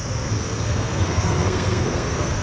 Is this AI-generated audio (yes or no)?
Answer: yes